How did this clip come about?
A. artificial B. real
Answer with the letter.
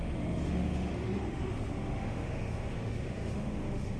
A